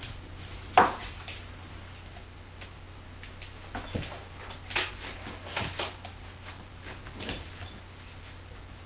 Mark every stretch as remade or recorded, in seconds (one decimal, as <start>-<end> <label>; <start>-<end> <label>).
0.0-8.9 recorded